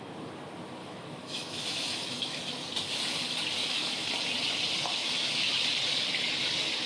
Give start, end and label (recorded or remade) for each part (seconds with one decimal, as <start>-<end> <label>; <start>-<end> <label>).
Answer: 0.0-0.8 recorded; 0.8-2.4 remade; 2.4-3.6 recorded; 3.6-4.1 remade; 4.1-5.0 recorded; 5.0-5.5 remade; 5.5-6.9 recorded